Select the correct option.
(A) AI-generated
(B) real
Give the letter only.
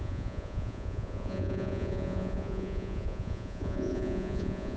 A